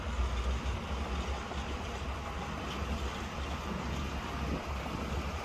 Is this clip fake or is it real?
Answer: real